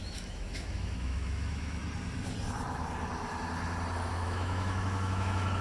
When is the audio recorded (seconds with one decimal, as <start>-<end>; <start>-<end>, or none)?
1.8-4.1